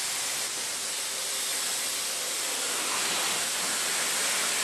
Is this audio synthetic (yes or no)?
no